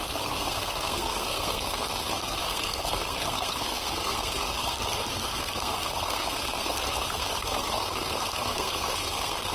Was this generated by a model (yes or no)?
yes